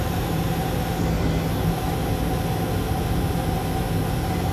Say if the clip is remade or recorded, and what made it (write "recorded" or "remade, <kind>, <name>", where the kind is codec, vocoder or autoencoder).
recorded